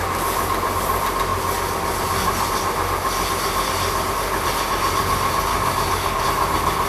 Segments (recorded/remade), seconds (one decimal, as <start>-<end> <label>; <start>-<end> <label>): 0.0-5.5 recorded; 5.5-6.2 remade; 6.2-6.9 recorded